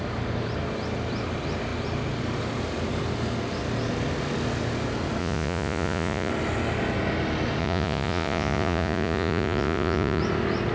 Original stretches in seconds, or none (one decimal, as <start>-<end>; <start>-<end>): 0.0-5.2; 6.3-7.6; 10.2-10.7